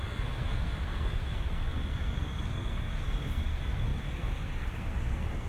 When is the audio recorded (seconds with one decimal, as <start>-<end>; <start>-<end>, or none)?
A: none